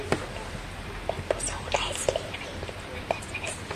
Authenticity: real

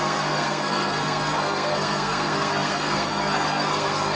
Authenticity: fake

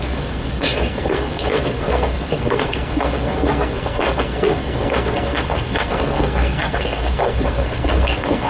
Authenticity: fake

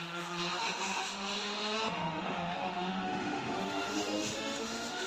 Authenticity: fake